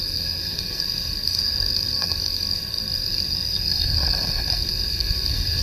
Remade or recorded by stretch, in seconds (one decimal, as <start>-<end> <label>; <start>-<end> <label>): 0.0-5.6 remade